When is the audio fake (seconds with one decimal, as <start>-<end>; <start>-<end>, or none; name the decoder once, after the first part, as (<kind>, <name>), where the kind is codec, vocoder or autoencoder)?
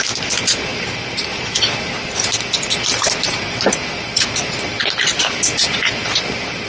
0.7-4.7 (vocoder, BigVGAN v2); 5.6-6.7